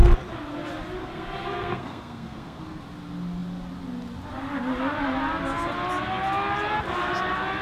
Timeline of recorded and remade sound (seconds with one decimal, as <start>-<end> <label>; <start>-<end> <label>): 0.0-1.0 recorded; 1.0-2.8 remade; 2.8-7.6 recorded